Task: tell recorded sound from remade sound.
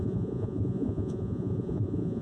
remade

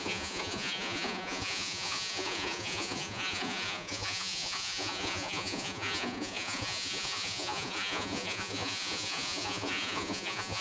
remade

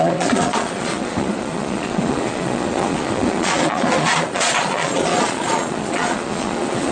remade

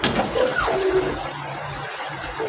recorded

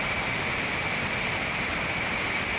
recorded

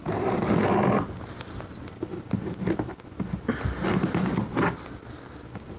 recorded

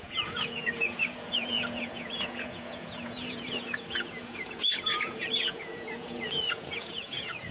remade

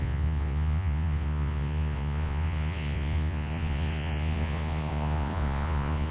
remade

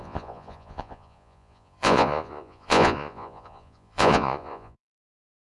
remade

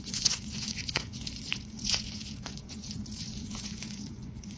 remade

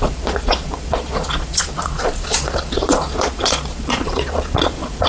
remade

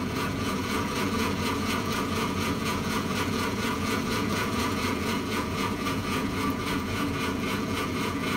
remade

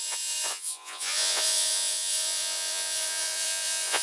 remade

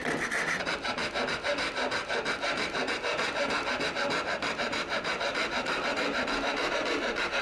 recorded